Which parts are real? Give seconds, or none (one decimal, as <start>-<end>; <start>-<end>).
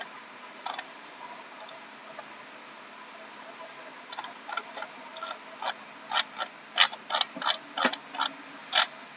2.0-3.4; 5.1-8.6